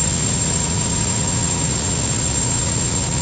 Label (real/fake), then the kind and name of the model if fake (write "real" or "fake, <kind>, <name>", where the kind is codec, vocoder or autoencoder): fake, vocoder, Vocos